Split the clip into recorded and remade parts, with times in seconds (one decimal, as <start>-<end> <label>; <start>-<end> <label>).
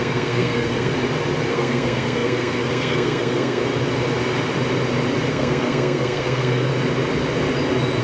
0.0-0.9 remade; 0.9-1.5 recorded; 1.5-3.6 remade; 3.6-5.3 recorded; 5.3-6.7 remade; 6.7-8.0 recorded